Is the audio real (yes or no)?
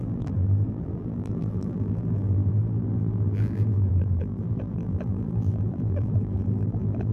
no